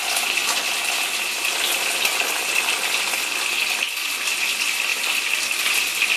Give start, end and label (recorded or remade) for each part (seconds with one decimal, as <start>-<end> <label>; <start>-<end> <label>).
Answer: 0.0-0.4 remade; 0.4-4.1 recorded; 4.1-6.2 remade